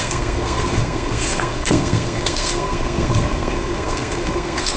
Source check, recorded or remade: remade